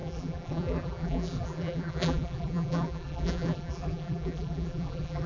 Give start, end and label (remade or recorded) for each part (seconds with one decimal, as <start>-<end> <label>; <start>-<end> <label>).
0.0-5.3 remade